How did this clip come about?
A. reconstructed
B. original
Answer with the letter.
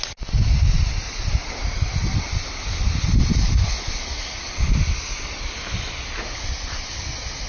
B